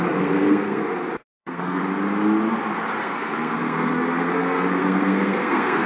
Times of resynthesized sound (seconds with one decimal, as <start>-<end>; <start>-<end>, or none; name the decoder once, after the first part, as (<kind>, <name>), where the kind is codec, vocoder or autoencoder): 0.0-0.8 (codec, SNAC); 1.4-1.8; 3.0-5.9